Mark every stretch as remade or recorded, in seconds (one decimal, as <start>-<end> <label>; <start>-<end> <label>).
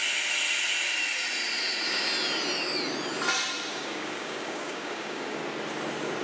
0.0-3.7 recorded; 3.7-5.4 remade; 5.4-6.2 recorded